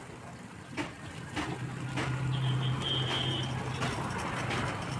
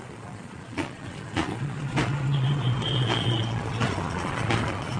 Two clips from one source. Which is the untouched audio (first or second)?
first